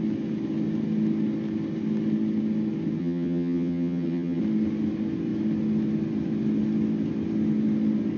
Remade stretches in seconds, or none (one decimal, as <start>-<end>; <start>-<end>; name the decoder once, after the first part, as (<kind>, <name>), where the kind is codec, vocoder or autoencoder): 3.0-4.4 (vocoder, HiFi-GAN)